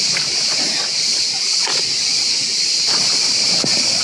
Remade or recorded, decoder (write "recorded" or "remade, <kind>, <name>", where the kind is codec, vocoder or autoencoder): recorded